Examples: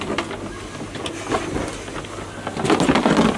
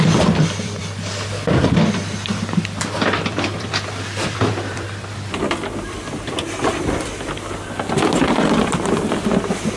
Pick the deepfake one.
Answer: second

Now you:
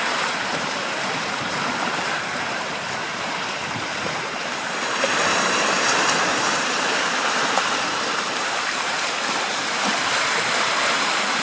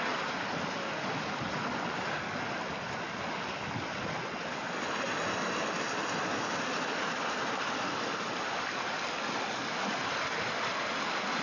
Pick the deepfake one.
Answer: first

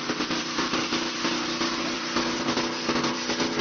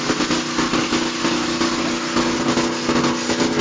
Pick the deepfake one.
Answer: first